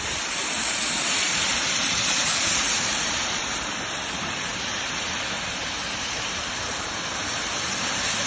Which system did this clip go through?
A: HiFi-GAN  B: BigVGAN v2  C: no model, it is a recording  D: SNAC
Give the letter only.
B